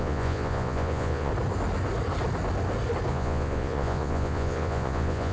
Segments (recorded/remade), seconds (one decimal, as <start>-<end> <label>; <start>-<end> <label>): 0.0-1.3 remade; 1.3-3.1 recorded; 3.1-5.3 remade